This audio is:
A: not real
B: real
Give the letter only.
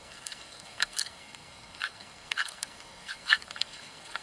A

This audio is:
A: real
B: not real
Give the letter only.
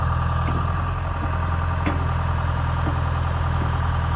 A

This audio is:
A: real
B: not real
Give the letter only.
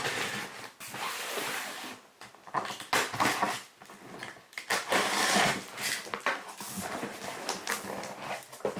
A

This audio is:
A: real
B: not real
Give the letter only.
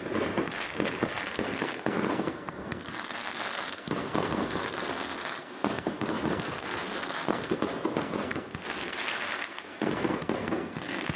B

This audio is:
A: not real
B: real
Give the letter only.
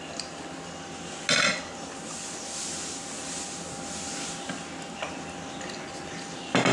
B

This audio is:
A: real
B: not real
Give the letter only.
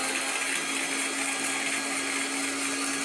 A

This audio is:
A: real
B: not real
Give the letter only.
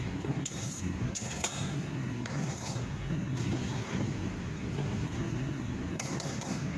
B